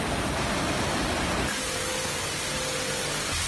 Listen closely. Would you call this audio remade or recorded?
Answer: recorded